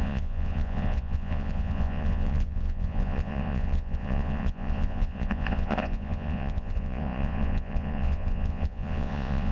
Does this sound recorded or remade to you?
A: remade